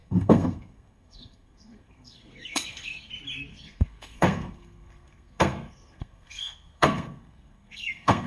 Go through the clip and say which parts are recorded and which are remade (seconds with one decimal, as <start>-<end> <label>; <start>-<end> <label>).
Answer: 0.0-3.1 remade; 3.1-3.5 recorded; 3.5-8.3 remade